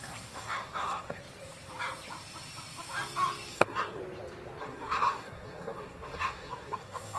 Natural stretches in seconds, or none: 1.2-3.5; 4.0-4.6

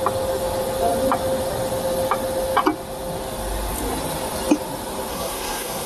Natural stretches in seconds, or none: 0.0-5.1

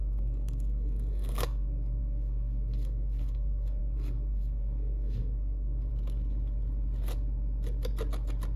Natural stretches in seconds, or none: 5.9-8.6

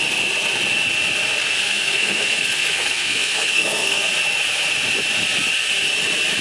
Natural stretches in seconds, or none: 0.0-1.4; 4.1-6.4

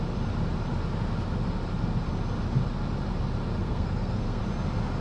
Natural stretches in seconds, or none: 0.0-3.6; 4.4-5.0

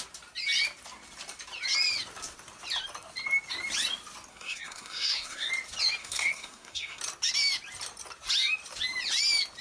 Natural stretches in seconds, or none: 0.0-4.3; 5.5-6.0; 7.0-9.6

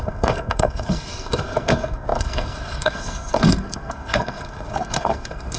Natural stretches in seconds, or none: none